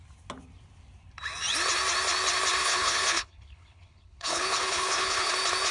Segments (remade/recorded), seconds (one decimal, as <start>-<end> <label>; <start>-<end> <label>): 0.0-2.6 recorded; 2.6-5.3 remade; 5.3-5.7 recorded